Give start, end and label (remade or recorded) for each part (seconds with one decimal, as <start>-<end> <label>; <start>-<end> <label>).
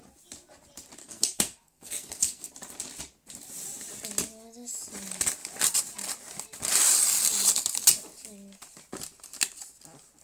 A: 0.0-1.0 recorded; 1.0-2.5 remade; 2.5-10.2 recorded